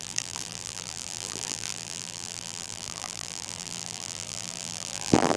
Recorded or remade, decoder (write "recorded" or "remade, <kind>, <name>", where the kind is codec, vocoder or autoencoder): remade, vocoder, BigVGAN v2